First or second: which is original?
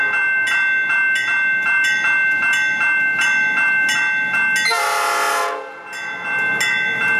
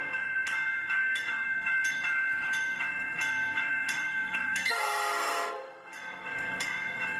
first